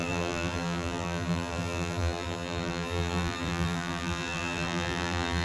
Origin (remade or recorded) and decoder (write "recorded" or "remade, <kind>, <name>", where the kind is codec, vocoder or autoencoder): remade, vocoder, BigVGAN v2